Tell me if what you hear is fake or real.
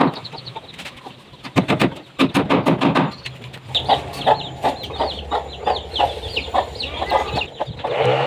real